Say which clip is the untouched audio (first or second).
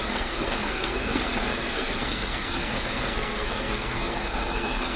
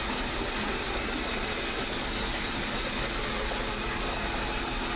second